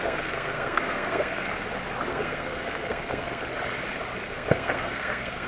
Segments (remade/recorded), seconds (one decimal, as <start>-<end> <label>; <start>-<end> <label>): 0.0-1.5 remade; 1.5-2.1 recorded; 2.1-3.4 remade; 3.4-4.3 recorded; 4.3-5.5 remade